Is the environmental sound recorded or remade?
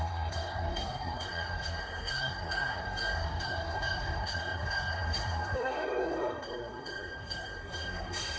remade